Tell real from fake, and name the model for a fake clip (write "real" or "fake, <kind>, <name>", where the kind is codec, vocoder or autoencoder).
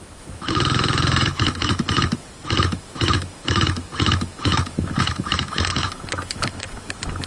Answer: fake, autoencoder, DAC-VAE